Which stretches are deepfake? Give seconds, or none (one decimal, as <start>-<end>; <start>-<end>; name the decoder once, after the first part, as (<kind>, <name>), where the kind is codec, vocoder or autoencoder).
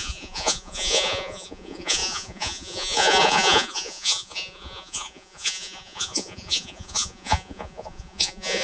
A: 0.0-8.6 (vocoder, Vocos)